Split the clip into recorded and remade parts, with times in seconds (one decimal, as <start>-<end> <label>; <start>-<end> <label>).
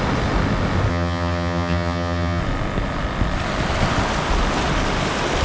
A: 0.0-0.9 recorded; 0.9-2.4 remade; 2.4-5.4 recorded